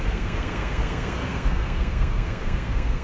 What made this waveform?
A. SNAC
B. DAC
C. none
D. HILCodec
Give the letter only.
A